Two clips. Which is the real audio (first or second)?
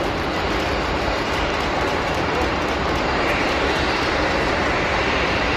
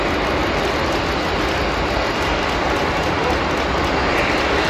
second